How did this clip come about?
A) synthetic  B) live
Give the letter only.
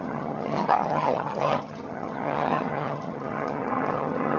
A